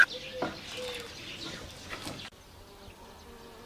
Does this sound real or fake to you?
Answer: real